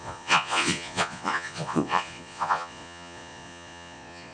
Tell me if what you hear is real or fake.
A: fake